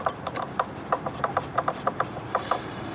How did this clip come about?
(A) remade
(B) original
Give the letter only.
B